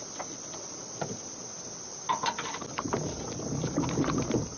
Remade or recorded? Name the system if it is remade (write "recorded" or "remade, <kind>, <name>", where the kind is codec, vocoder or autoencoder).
recorded